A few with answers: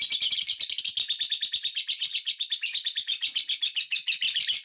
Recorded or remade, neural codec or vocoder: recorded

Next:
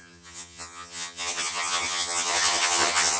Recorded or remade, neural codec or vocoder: remade, vocoder, HiFi-GAN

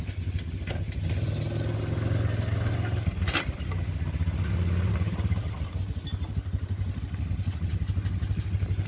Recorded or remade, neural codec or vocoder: recorded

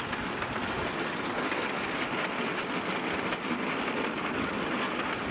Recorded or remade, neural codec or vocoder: recorded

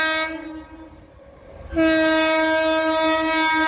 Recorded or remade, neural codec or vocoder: recorded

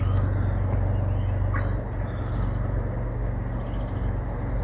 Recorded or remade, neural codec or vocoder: recorded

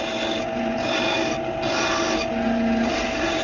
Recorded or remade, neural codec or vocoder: recorded